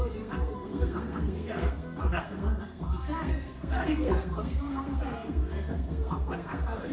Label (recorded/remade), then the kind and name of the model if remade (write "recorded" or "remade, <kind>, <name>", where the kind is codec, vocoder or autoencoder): remade, codec, SNAC